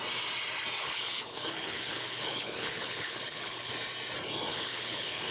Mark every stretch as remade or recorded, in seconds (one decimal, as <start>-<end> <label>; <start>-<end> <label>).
0.0-0.8 recorded; 0.8-3.7 remade; 3.7-4.5 recorded; 4.5-5.3 remade